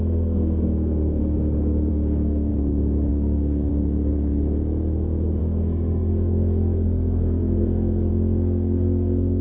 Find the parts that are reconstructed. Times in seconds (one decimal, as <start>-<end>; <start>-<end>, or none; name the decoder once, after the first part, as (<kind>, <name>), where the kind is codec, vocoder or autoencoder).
0.0-1.2 (codec, SNAC); 1.9-2.5; 3.1-3.7; 5.4-9.4